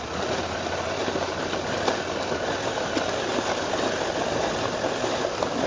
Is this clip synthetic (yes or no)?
no